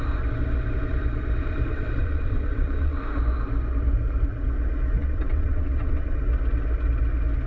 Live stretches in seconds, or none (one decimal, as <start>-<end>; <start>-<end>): 0.0-1.7; 3.0-5.0; 6.2-7.5

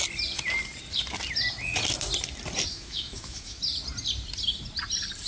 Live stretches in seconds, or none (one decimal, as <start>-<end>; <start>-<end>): 0.0-2.7; 3.6-5.3

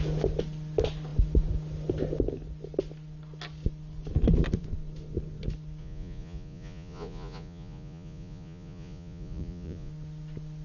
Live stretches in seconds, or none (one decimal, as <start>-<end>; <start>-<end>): 0.0-5.8; 9.9-10.6